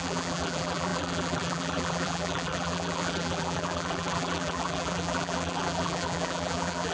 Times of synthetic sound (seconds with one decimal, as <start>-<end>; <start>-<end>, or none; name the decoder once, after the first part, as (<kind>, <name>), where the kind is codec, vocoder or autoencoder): 0.0-6.9 (vocoder, BigVGAN v2)